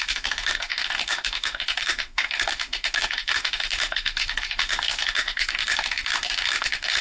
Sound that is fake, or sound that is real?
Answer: fake